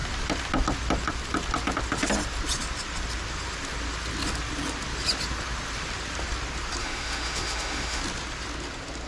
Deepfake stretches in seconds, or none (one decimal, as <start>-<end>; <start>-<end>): 6.8-8.0